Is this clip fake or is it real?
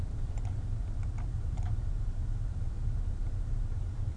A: fake